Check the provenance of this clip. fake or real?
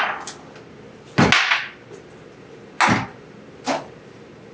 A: real